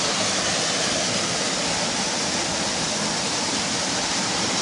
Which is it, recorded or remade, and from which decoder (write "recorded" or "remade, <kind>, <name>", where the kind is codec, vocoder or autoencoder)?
recorded